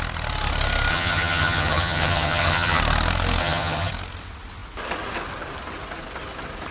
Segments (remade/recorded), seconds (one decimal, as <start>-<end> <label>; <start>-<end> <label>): 0.0-0.9 recorded; 0.9-2.8 remade; 2.8-3.4 recorded; 3.4-3.9 remade; 3.9-6.7 recorded